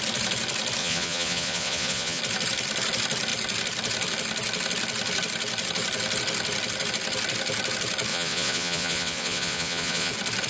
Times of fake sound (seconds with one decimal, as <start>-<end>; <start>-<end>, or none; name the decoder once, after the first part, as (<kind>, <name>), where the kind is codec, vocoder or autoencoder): 0.8-2.2 (vocoder, Vocos); 8.1-10.1